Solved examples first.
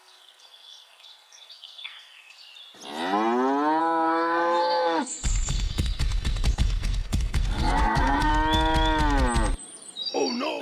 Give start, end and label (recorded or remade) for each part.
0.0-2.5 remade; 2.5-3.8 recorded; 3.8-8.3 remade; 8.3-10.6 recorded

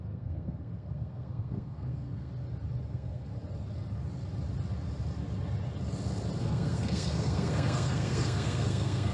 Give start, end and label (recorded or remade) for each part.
0.0-2.3 remade; 2.3-2.9 recorded; 2.9-3.3 remade; 3.3-6.4 recorded; 6.4-9.1 remade

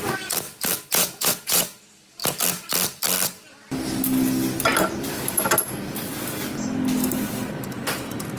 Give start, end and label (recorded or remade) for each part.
0.0-0.9 recorded; 0.9-1.6 remade; 1.6-8.4 recorded

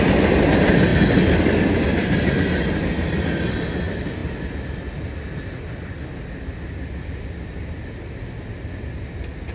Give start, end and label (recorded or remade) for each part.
0.0-9.5 recorded

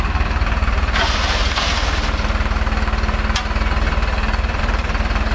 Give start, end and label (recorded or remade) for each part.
0.0-1.4 remade; 1.4-4.6 recorded; 4.6-5.3 remade

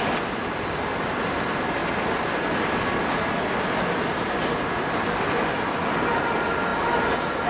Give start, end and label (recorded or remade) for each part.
0.0-7.5 recorded

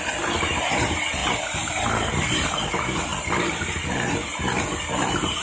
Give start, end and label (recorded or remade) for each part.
0.0-1.2 recorded; 1.2-2.1 remade; 2.1-3.1 recorded; 3.1-4.3 remade; 4.3-5.4 recorded

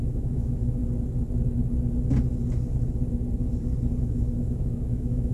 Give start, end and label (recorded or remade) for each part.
0.0-0.8 remade; 0.8-4.0 recorded; 4.0-5.3 remade